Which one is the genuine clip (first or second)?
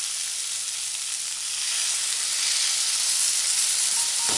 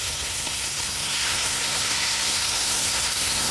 first